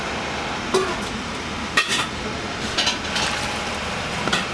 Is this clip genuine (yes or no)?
yes